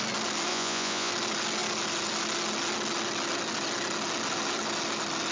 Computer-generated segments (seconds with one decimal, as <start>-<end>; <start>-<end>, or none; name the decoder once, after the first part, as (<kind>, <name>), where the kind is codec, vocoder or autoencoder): 0.5-1.1 (vocoder, Vocos)